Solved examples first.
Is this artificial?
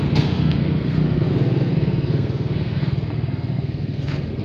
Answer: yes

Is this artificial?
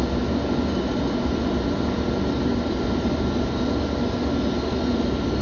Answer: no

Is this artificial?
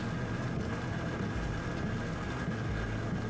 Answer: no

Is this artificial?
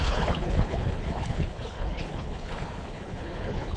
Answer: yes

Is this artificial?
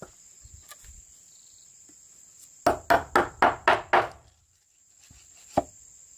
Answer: no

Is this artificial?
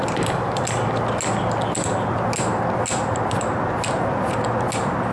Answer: no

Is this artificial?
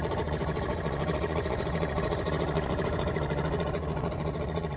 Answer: yes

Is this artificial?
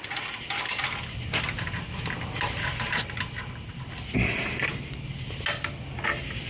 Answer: no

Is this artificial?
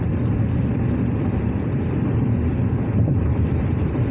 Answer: yes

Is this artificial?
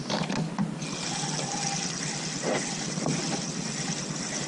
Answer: no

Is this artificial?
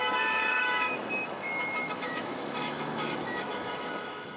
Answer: yes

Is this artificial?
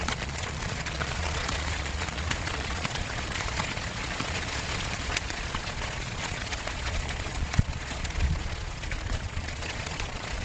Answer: yes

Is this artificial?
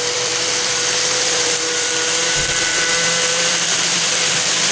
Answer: yes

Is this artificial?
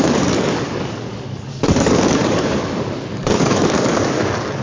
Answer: yes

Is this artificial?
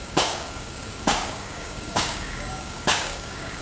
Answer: yes